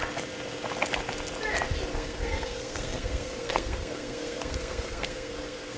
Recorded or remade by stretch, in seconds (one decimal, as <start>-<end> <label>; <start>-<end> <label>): 0.0-1.9 recorded; 1.9-5.8 remade